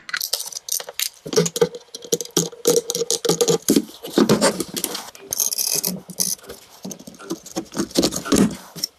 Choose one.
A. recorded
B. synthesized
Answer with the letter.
A